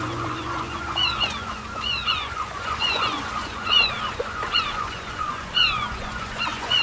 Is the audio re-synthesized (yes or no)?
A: yes